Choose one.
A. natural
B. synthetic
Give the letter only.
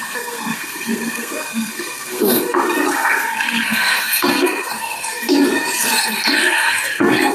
B